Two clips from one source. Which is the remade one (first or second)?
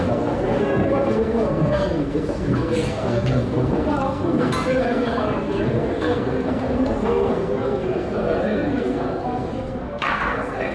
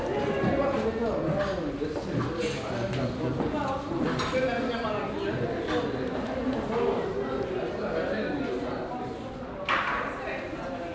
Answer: first